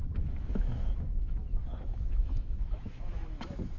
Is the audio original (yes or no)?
no